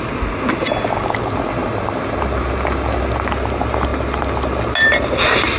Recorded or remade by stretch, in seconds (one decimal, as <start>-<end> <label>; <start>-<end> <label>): 0.0-5.6 recorded